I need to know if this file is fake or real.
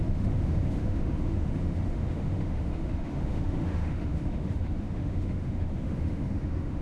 fake